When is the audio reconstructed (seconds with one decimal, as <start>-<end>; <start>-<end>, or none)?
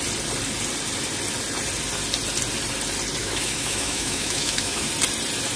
3.2-4.9